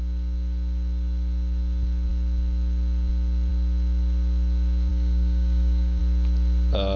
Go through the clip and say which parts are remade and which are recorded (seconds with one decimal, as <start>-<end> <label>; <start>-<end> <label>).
0.0-4.9 recorded; 4.9-6.0 remade; 6.0-7.0 recorded

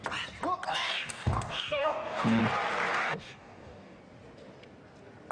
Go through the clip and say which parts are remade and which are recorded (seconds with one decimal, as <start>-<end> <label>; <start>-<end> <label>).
0.0-0.7 recorded; 0.7-2.4 remade; 2.4-2.9 recorded; 2.9-4.0 remade; 4.0-5.3 recorded

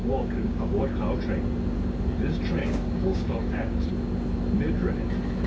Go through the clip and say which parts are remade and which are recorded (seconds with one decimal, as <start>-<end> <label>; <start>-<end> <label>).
0.0-0.8 remade; 0.8-2.6 recorded; 2.6-3.9 remade; 3.9-5.5 recorded